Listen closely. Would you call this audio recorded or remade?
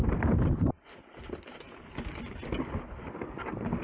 recorded